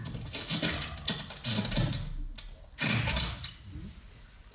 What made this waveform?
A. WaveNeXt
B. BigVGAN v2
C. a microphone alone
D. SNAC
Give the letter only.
C